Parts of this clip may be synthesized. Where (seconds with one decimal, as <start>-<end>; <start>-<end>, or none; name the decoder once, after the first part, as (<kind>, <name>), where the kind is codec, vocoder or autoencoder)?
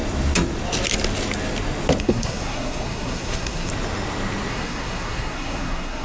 2.0-3.7 (codec, SNAC); 4.5-6.0